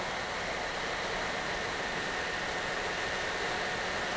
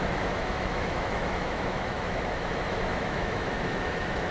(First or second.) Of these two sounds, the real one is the first